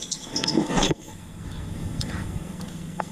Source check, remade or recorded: remade